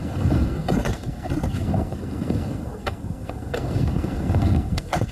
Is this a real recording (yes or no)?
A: no